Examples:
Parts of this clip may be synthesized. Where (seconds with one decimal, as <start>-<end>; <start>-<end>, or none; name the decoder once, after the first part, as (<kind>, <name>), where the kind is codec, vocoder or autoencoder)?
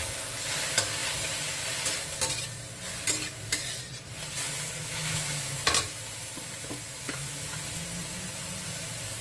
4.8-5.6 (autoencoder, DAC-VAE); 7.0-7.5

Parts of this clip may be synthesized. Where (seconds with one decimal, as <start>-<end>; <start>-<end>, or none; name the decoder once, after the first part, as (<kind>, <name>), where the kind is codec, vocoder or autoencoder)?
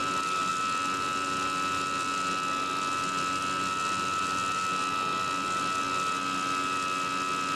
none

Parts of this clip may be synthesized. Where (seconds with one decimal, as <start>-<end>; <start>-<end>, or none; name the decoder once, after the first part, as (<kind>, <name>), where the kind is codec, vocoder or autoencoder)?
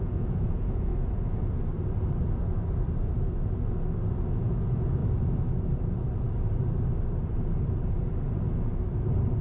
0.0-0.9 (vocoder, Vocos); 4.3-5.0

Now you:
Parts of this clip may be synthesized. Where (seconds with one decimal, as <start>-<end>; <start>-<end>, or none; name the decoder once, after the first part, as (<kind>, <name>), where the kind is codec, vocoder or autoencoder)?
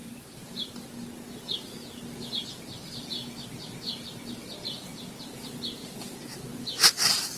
0.0-0.7 (vocoder, BigVGAN v2)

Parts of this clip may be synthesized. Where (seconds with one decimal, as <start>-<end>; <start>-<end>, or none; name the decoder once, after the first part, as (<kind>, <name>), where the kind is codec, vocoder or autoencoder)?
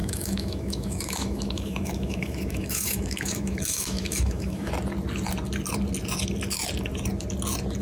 0.0-4.7 (autoencoder, DAC-VAE)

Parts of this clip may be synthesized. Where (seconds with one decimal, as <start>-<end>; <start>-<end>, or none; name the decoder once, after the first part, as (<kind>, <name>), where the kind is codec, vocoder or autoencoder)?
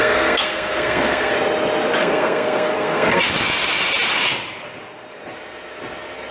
0.0-1.3 (codec, SNAC); 2.0-3.2